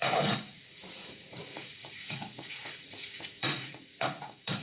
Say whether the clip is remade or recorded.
remade